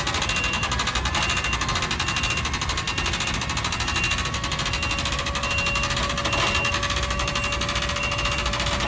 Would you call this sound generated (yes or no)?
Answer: no